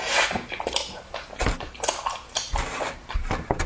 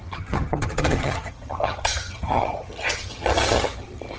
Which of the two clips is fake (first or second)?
second